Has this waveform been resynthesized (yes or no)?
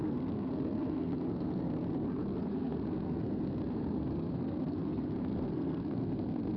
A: yes